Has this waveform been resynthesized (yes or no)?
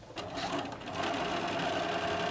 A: no